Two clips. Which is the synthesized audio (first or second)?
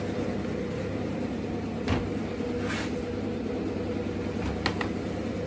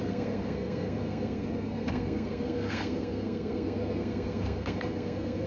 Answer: second